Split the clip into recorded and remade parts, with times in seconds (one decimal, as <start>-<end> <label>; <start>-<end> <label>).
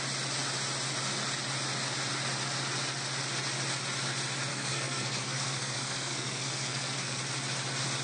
0.0-4.5 recorded; 4.5-7.2 remade; 7.2-8.0 recorded